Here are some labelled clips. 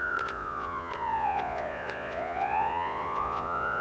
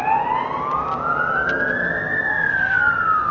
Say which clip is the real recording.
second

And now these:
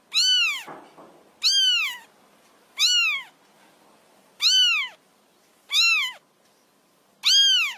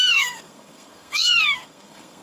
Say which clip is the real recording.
first